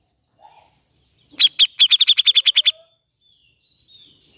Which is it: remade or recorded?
recorded